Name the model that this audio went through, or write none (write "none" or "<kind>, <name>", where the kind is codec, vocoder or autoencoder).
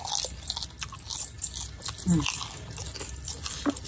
none